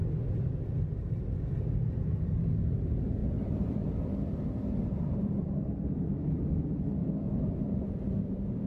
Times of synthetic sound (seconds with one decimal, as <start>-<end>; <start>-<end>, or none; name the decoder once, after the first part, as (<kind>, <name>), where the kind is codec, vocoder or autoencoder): 3.2-5.7 (vocoder, BigVGAN v2)